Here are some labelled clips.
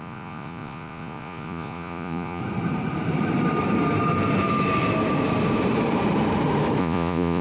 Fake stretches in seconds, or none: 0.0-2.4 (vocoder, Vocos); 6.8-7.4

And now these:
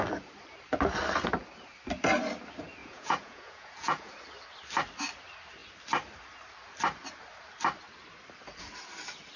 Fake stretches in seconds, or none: 2.8-4.1 (vocoder, Vocos)

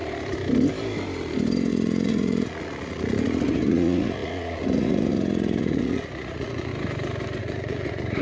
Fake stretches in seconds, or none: 1.7-6.7 (vocoder, Vocos); 7.4-8.2

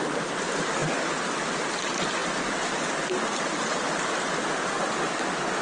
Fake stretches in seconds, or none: none